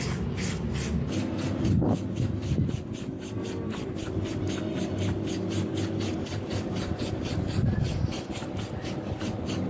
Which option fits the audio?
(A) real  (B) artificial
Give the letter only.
A